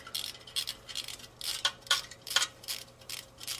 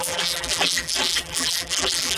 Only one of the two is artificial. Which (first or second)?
second